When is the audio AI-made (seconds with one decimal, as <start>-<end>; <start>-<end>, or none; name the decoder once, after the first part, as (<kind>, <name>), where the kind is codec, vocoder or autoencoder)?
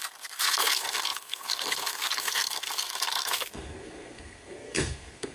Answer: 0.0-5.3 (codec, SNAC)